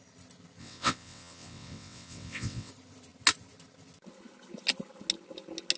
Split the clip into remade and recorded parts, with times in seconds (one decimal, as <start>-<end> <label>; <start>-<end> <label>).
0.0-0.6 recorded; 0.6-2.7 remade; 2.7-5.8 recorded